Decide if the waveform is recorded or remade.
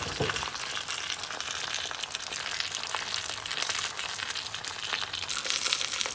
recorded